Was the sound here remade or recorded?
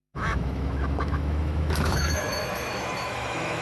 remade